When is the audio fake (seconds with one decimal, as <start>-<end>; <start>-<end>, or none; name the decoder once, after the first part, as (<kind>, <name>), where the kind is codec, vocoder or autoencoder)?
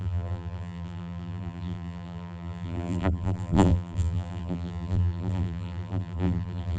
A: 0.0-6.8 (vocoder, BigVGAN v2)